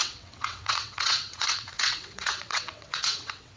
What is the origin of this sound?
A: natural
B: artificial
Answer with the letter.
B